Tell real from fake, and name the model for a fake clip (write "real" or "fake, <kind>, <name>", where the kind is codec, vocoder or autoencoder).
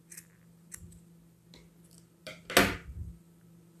real